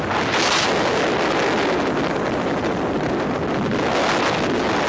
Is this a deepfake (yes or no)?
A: no